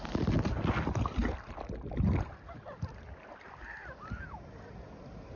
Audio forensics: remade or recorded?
recorded